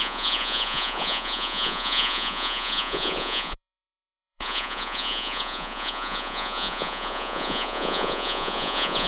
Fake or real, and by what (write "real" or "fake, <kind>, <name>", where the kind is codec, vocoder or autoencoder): fake, vocoder, Vocos